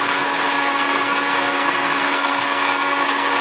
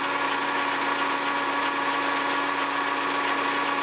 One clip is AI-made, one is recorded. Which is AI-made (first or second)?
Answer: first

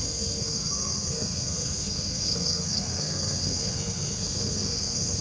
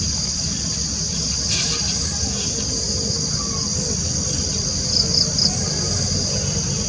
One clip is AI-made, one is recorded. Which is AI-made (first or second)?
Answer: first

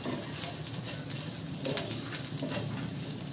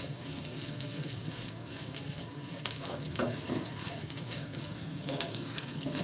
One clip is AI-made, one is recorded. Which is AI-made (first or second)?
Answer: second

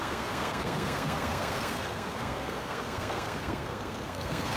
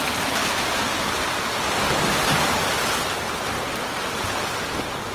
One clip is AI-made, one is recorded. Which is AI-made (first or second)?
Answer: first